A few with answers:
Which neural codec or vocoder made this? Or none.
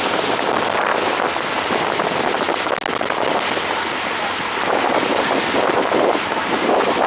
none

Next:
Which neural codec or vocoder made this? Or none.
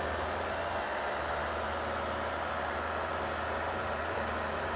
none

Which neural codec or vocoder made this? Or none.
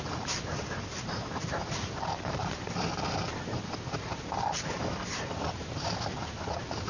vocoder, BigVGAN v2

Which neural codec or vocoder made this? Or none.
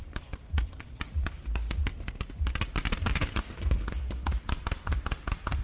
vocoder, BigVGAN v2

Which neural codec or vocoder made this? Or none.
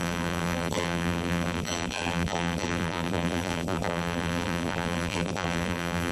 vocoder, BigVGAN v2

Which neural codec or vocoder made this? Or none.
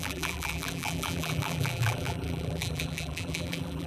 vocoder, BigVGAN v2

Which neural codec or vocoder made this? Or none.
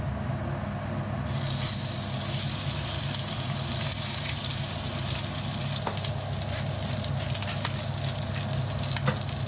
none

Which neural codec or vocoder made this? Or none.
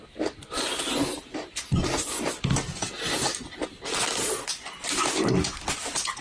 none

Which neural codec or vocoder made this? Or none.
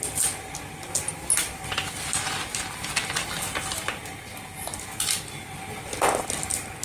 none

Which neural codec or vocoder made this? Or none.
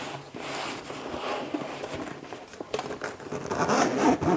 none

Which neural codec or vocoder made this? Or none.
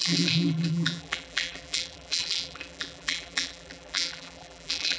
vocoder, BigVGAN v2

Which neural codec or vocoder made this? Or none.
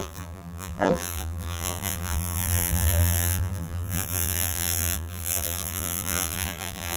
vocoder, BigVGAN v2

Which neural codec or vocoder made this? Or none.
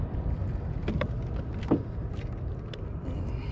vocoder, BigVGAN v2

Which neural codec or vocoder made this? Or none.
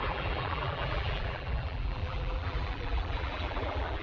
vocoder, BigVGAN v2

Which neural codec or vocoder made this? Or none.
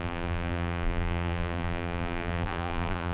vocoder, BigVGAN v2